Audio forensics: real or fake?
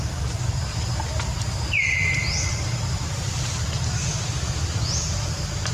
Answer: real